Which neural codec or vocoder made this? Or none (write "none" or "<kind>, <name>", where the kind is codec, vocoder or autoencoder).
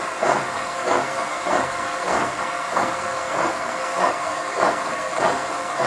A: codec, SNAC